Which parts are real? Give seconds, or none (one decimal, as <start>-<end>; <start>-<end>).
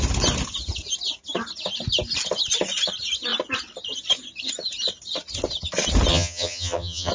0.0-6.1